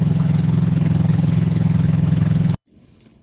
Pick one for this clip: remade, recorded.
remade